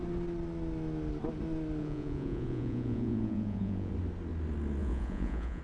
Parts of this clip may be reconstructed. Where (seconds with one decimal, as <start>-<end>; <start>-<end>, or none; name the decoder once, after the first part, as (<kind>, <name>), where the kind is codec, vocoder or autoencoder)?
1.8-3.9 (vocoder, Vocos); 4.8-5.6